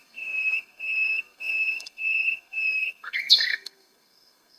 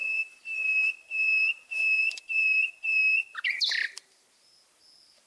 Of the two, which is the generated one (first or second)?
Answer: first